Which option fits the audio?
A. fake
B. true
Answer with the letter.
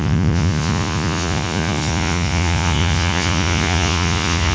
A